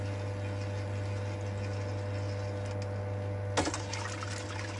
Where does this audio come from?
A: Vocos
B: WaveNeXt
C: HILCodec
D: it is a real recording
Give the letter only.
D